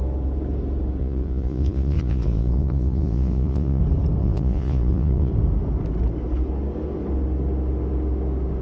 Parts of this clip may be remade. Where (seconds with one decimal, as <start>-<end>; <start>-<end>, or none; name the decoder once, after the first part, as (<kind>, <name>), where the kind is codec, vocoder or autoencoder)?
1.0-3.8 (vocoder, Vocos); 4.2-5.3